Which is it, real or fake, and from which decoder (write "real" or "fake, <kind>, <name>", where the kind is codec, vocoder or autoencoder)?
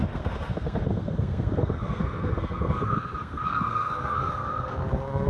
fake, codec, SNAC